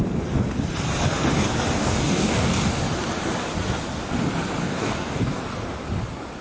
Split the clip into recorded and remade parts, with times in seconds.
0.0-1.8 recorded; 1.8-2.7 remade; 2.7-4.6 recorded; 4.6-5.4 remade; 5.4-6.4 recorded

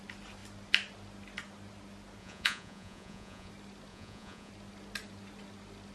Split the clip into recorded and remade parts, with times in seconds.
0.0-2.2 recorded; 2.2-3.5 remade; 3.5-3.9 recorded; 3.9-4.5 remade; 4.5-5.9 recorded

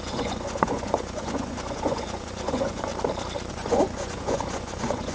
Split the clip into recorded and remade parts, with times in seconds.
0.0-2.9 remade; 2.9-3.5 recorded; 3.5-5.1 remade

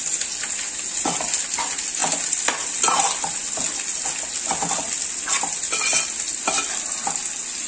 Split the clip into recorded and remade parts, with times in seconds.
0.0-7.7 recorded

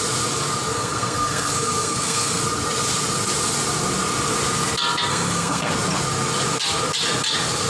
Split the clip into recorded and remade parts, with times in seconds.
0.0-0.7 recorded; 0.7-2.4 remade; 2.4-5.1 recorded; 5.1-5.7 remade; 5.7-7.7 recorded